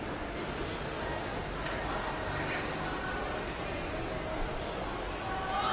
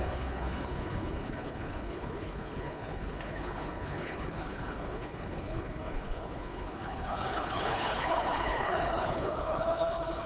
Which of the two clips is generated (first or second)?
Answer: second